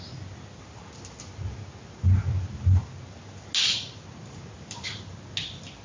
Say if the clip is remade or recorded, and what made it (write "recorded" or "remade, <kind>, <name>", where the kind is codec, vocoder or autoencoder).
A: recorded